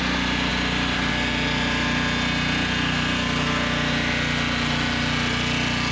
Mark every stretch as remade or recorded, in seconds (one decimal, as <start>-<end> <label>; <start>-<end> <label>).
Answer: 0.0-0.5 recorded; 0.5-1.1 remade; 1.1-5.9 recorded